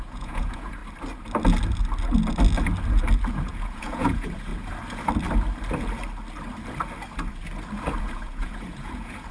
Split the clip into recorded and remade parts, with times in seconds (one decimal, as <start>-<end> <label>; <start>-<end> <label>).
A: 0.0-0.8 remade; 0.8-3.3 recorded; 3.3-4.5 remade; 4.5-8.0 recorded; 8.0-9.3 remade